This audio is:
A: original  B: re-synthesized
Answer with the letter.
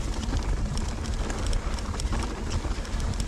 A